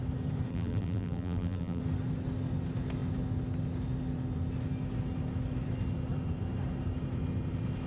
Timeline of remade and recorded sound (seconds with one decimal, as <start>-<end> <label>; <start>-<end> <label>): 0.0-0.5 recorded; 0.5-1.8 remade; 1.8-7.9 recorded